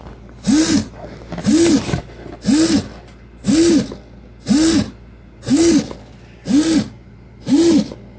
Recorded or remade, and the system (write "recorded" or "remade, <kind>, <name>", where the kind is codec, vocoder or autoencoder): recorded